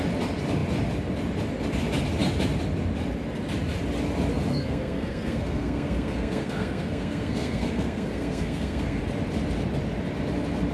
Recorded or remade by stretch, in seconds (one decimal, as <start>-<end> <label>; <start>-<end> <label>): 0.0-4.5 recorded; 4.5-9.0 remade; 9.0-10.7 recorded